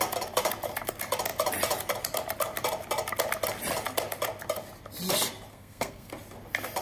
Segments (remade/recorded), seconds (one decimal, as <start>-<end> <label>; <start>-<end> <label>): 0.0-5.5 recorded; 5.5-6.1 remade; 6.1-6.8 recorded